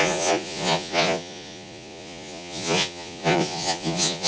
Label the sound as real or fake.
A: fake